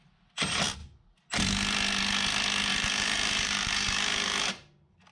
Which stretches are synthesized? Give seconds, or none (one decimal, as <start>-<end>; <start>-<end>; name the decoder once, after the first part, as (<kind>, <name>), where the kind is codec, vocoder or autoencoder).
2.7-5.1 (vocoder, BigVGAN v2)